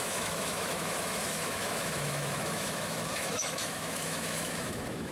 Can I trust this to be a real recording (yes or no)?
no